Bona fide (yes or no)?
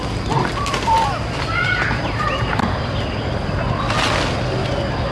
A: yes